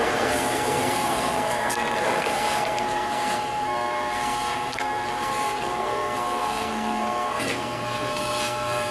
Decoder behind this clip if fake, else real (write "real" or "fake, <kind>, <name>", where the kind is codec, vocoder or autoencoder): fake, codec, SNAC